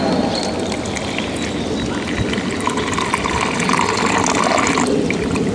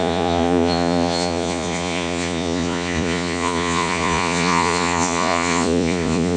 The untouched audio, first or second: first